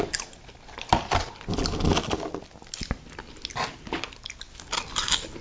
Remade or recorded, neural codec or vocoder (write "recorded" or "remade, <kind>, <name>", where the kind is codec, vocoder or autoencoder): recorded